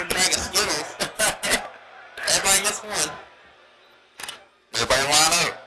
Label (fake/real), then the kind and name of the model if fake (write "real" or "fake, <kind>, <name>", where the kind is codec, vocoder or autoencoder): real